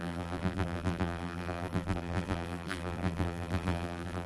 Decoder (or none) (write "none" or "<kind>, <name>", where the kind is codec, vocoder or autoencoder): vocoder, BigVGAN v2